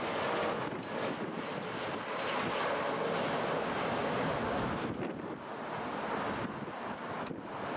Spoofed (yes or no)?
no